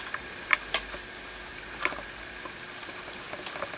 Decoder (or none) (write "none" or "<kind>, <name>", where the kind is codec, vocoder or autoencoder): none